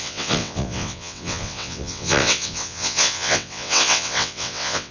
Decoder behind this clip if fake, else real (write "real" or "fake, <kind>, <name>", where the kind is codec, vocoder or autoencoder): fake, vocoder, WaveNeXt